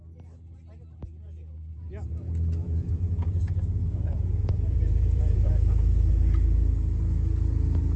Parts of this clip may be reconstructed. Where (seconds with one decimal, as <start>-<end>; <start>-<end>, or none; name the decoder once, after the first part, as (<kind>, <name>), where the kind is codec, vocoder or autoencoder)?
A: 2.6-5.5 (vocoder, Vocos)